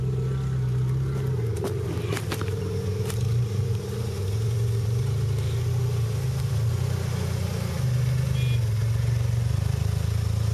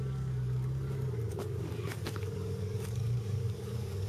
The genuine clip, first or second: first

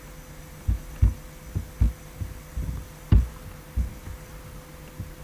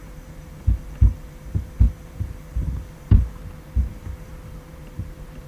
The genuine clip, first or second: first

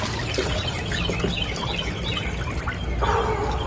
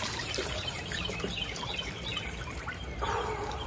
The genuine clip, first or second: first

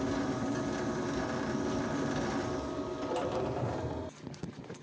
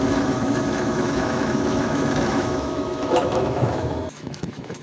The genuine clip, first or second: first